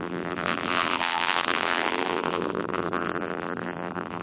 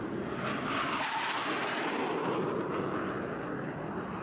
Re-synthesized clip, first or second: first